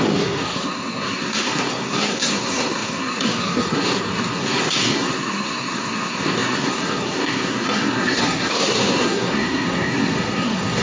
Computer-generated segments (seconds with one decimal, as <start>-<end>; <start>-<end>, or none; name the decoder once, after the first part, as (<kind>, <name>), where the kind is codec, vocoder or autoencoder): 0.0-10.8 (codec, SNAC)